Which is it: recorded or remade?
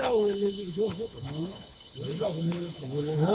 remade